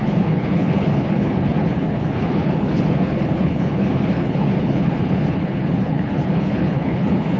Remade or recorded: remade